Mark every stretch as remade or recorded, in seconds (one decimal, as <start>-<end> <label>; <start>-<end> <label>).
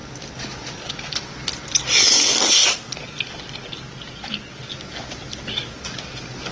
0.0-6.5 recorded